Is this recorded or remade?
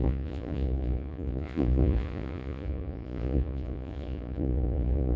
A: remade